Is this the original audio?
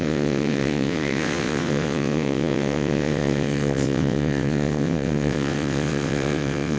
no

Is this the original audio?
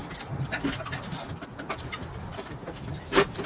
yes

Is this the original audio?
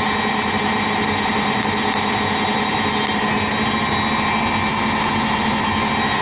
yes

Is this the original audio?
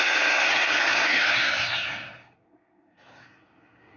no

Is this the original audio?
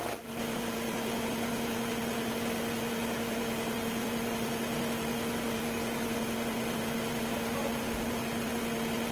yes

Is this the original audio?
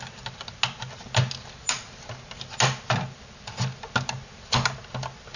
yes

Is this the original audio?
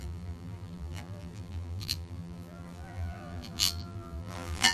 no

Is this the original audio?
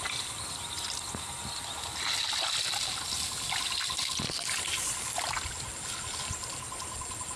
yes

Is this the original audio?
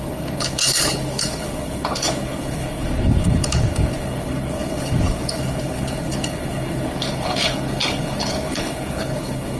no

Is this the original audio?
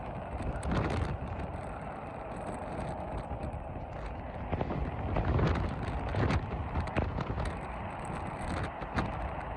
no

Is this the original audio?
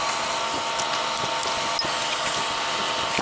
yes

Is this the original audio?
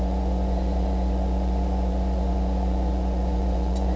no